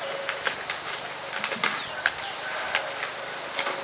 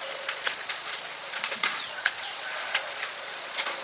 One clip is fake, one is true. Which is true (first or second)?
first